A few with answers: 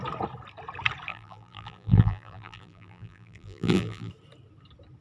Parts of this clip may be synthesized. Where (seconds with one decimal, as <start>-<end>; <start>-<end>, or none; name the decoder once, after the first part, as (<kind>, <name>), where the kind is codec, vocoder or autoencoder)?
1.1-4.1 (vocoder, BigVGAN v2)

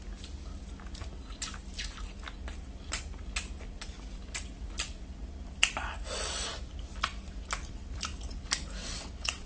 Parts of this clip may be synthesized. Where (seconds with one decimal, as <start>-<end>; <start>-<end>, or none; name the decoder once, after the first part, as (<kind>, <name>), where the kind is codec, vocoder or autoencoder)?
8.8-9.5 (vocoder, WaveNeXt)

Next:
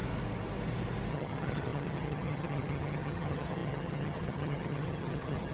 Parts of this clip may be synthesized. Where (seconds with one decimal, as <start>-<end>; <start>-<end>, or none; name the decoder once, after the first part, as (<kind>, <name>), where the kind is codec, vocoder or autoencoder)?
1.1-5.5 (vocoder, HiFi-GAN)